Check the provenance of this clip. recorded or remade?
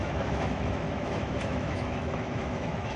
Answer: remade